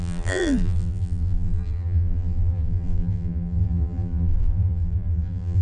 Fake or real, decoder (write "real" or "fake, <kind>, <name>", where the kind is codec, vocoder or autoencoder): fake, vocoder, BigVGAN v2